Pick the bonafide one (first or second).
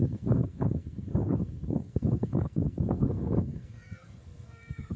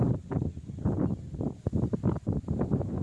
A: second